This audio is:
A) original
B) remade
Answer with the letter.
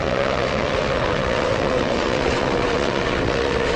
B